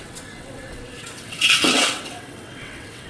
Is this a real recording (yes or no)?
no